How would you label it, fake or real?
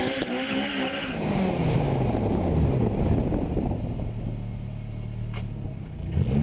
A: real